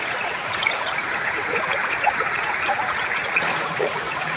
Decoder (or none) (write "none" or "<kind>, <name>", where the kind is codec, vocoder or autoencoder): vocoder, Vocos